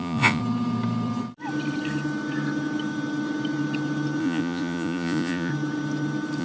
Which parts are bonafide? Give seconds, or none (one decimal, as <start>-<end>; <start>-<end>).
0.4-4.2; 5.5-6.4